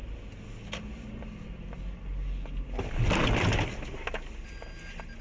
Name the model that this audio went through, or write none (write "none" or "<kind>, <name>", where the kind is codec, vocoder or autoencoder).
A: none